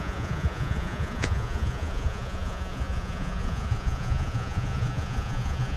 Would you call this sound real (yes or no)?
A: no